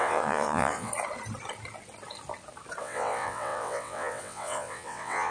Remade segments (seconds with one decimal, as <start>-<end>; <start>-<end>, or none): 0.0-0.9; 2.8-5.3